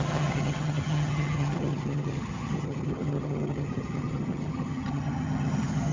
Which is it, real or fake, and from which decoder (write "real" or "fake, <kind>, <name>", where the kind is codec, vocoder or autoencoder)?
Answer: fake, vocoder, HiFi-GAN